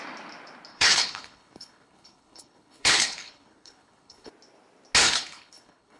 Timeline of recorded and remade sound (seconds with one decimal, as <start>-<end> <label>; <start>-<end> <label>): 0.0-0.7 recorded; 0.7-4.3 remade; 4.3-5.0 recorded; 5.0-6.0 remade